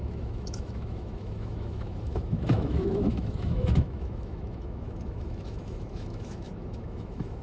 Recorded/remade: remade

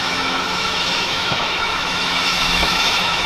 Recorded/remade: remade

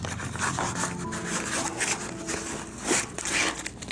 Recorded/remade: recorded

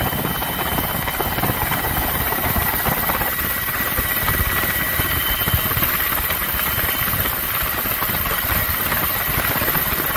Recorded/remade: recorded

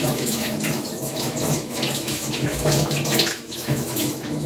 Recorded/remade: remade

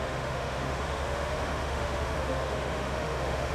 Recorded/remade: remade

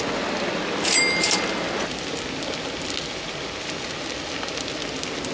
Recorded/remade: recorded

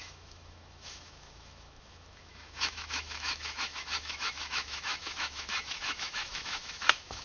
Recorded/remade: remade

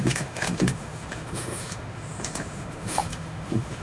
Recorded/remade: remade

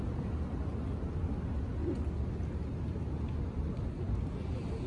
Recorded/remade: recorded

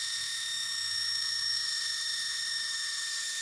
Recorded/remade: remade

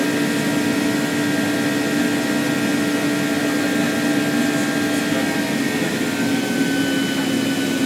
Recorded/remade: recorded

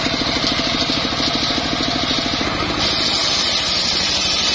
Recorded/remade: recorded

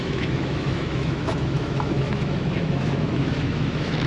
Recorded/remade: remade